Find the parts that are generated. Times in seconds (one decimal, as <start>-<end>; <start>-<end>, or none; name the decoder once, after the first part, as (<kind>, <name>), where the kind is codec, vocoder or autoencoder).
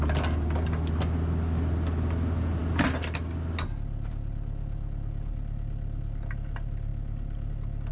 none